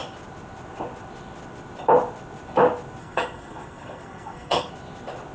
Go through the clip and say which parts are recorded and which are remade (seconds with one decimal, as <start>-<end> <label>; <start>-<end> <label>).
0.0-3.0 recorded; 3.0-4.7 remade; 4.7-5.3 recorded